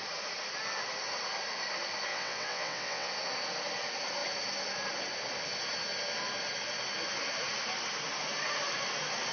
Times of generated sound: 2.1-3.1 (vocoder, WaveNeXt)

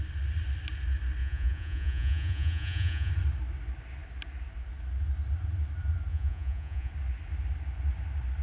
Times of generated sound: 1.2-3.1 (vocoder, Vocos); 6.1-6.9

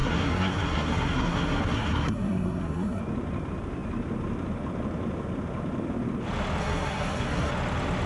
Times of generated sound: 0.0-3.0 (codec, SNAC); 6.6-7.5

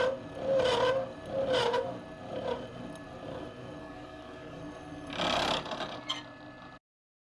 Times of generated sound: 3.8-4.6 (codec, DAC)